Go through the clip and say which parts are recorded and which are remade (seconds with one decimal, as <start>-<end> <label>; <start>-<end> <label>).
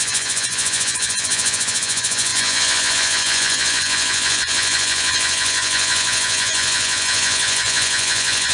0.0-8.5 remade